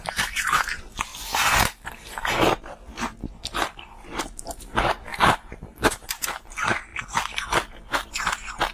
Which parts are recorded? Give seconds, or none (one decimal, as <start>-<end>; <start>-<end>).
1.1-1.9; 2.9-3.6; 6.9-8.1

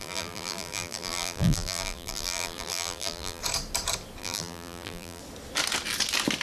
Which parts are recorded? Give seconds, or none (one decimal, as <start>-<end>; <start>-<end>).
3.4-4.2; 5.2-6.4